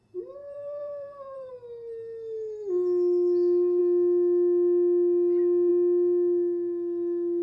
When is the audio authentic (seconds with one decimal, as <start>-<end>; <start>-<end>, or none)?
0.0-0.4; 1.5-7.4